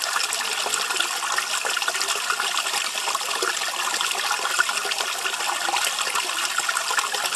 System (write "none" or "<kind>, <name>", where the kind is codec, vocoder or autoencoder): none